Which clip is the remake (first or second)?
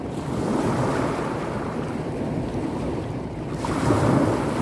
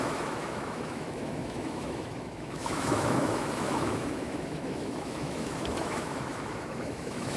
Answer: second